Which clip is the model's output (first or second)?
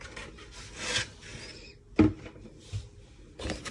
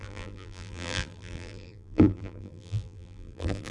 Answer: second